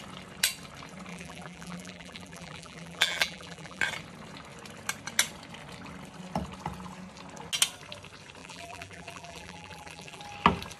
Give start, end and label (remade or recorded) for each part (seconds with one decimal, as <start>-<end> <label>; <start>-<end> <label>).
0.0-1.1 recorded; 1.1-3.8 remade; 3.8-8.4 recorded; 8.4-10.2 remade; 10.2-10.8 recorded

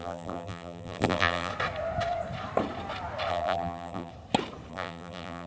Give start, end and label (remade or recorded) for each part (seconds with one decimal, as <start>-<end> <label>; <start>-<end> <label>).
0.0-1.5 remade; 1.5-3.3 recorded; 3.3-4.1 remade; 4.1-4.7 recorded; 4.7-5.5 remade

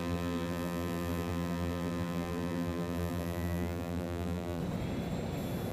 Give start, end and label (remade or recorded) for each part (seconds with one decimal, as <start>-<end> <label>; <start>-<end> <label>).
0.0-4.6 remade; 4.6-5.7 recorded

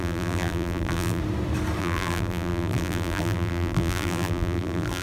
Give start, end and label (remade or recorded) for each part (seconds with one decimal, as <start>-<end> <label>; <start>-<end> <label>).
0.0-1.2 remade; 1.2-1.8 recorded; 1.8-5.0 remade

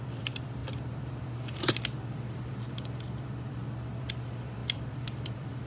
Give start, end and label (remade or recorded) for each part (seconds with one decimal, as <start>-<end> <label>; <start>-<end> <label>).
0.0-5.7 remade

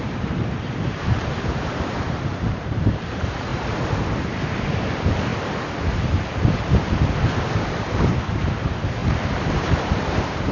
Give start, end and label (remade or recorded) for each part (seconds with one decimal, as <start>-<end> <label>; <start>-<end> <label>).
0.0-3.5 remade; 3.5-4.4 recorded; 4.4-5.3 remade; 5.3-7.6 recorded; 7.6-10.5 remade

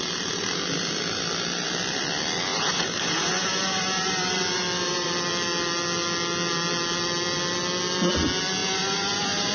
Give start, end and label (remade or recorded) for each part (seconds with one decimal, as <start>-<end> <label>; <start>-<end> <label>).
0.0-2.5 recorded; 2.5-5.1 remade; 5.1-8.6 recorded; 8.6-9.5 remade

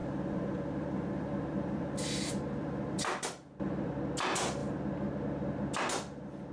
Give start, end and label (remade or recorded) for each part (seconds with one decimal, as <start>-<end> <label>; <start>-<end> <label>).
0.0-3.9 remade; 3.9-6.5 recorded